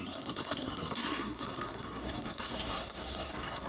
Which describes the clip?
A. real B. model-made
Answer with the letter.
B